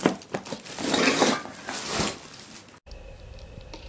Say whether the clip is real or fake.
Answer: real